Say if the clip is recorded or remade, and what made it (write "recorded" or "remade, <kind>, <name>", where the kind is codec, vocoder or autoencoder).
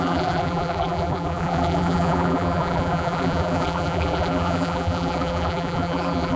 remade, vocoder, BigVGAN v2